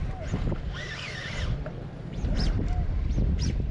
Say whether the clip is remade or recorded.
recorded